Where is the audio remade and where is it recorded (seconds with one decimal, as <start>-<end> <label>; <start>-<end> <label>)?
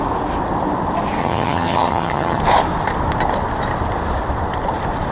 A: 0.0-1.2 recorded; 1.2-2.4 remade; 2.4-5.1 recorded